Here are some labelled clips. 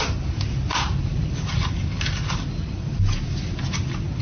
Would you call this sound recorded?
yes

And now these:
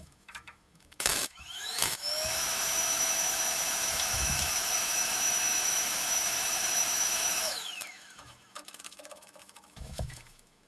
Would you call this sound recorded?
no